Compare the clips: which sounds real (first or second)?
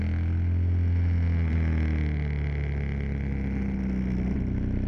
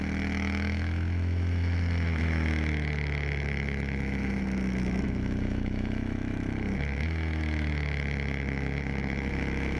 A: first